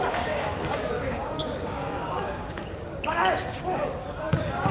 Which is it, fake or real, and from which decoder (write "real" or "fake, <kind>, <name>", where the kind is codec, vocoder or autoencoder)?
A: fake, codec, DAC